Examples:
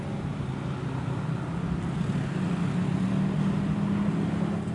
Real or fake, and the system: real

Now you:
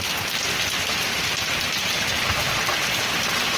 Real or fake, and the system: real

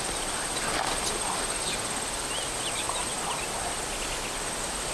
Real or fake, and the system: real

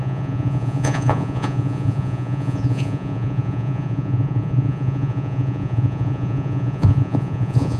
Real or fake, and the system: fake, vocoder, Vocos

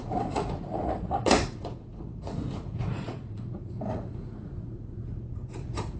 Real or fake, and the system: fake, vocoder, Vocos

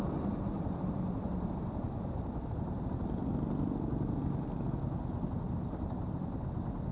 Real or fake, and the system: real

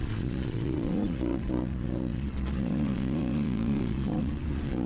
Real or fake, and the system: fake, vocoder, Vocos